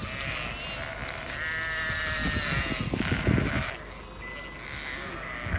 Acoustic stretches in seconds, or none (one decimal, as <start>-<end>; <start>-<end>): 0.0-5.6

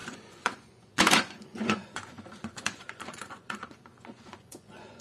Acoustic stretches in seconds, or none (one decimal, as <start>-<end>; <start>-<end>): none

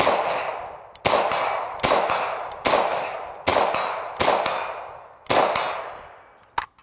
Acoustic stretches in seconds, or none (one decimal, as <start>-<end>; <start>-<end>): 0.0-6.8

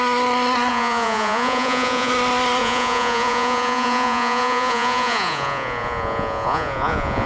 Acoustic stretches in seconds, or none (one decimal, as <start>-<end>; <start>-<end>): 0.0-0.7; 2.1-2.6

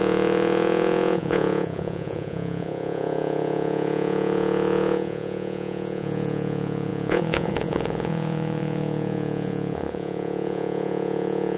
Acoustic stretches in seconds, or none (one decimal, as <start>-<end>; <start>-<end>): none

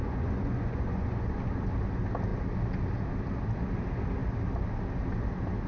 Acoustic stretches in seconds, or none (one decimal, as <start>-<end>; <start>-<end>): 1.5-5.7

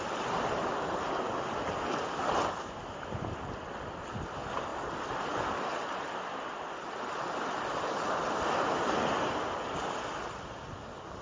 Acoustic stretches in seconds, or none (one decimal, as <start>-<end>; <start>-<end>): 0.0-11.2

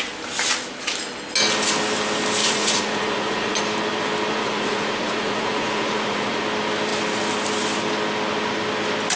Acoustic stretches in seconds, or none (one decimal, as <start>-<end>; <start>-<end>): 0.0-2.4; 3.6-4.3; 6.4-9.2